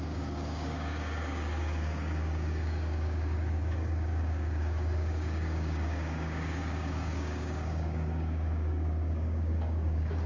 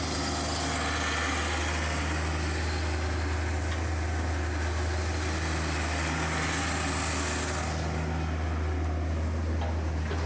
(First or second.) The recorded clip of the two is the second